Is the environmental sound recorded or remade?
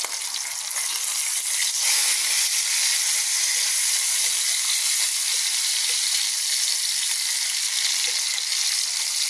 recorded